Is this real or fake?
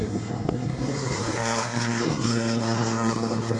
fake